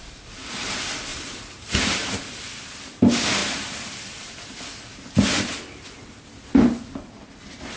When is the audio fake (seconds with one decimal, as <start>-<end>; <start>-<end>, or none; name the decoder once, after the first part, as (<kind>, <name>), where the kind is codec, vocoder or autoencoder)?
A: 1.1-2.4 (vocoder, BigVGAN v2); 3.4-4.8